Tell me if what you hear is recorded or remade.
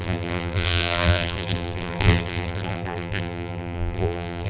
remade